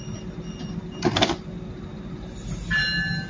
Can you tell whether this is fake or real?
real